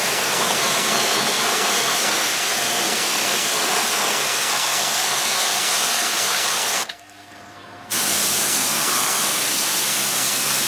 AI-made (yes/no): yes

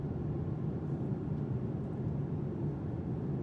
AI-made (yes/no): no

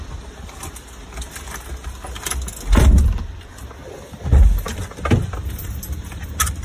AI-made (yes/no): no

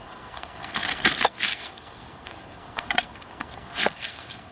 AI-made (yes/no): yes